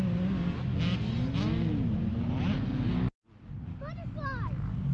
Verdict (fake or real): real